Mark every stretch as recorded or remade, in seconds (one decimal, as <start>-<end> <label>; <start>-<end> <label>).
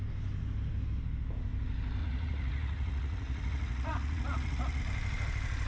0.0-2.0 recorded; 2.0-4.8 remade; 4.8-5.7 recorded